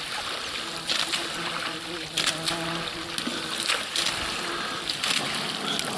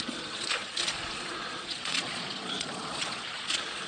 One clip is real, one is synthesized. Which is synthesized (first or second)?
second